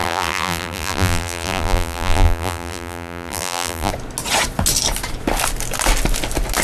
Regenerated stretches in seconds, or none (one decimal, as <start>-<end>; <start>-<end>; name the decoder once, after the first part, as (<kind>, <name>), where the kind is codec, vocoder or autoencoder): 0.0-3.9 (vocoder, BigVGAN v2)

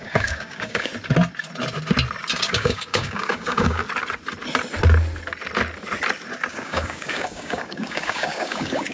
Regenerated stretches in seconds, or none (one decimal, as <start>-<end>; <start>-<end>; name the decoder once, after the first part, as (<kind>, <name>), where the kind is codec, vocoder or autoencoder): 0.0-0.9 (codec, DAC); 2.3-3.8; 6.5-8.9

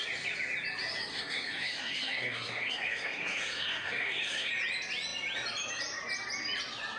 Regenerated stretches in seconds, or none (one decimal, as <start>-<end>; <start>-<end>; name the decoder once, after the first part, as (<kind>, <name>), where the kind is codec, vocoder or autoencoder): 1.1-4.5 (codec, SNAC)

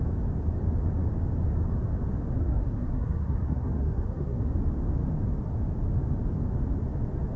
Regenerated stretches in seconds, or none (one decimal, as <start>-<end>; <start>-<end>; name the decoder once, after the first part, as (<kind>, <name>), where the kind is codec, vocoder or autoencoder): 2.4-4.4 (codec, SNAC)

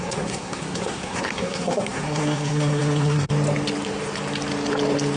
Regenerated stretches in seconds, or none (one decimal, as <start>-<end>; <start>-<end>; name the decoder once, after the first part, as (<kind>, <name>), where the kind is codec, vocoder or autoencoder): 0.0-3.3 (codec, SNAC)

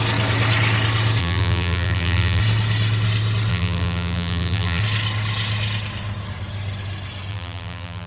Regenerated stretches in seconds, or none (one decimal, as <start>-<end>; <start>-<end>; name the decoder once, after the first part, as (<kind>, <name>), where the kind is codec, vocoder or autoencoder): 1.2-2.4 (vocoder, BigVGAN v2); 3.5-4.8; 7.3-8.1

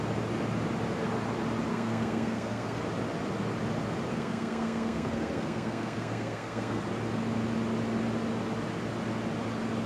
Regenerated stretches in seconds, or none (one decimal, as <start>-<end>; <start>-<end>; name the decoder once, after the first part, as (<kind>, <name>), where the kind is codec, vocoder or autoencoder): 1.7-2.8 (codec, SNAC); 4.1-6.8